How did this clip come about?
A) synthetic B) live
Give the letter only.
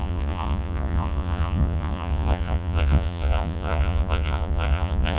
A